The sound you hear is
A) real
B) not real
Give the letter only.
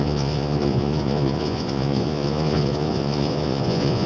B